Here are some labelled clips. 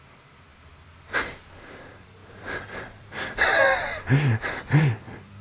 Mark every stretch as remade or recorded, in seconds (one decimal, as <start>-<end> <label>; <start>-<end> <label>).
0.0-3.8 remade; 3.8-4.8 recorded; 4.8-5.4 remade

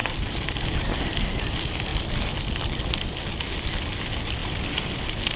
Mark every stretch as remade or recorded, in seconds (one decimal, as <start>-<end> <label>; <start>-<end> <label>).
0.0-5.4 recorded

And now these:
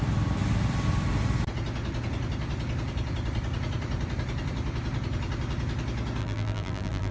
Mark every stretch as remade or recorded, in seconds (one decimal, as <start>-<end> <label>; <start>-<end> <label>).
0.0-6.2 recorded; 6.2-7.1 remade

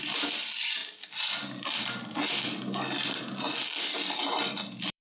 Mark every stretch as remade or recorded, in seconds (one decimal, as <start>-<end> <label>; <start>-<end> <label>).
0.0-0.8 remade; 0.8-3.8 recorded; 3.8-5.0 remade

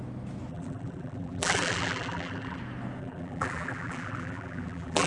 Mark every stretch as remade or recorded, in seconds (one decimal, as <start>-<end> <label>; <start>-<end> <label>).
0.0-0.5 recorded; 0.5-2.6 remade; 2.6-3.0 recorded; 3.0-5.1 remade